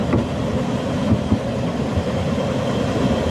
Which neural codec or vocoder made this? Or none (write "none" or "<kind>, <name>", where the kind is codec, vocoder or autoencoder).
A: none